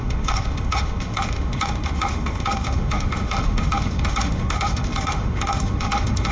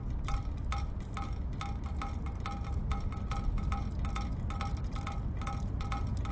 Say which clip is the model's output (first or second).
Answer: first